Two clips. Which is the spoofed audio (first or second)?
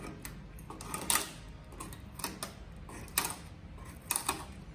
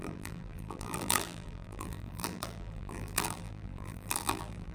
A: second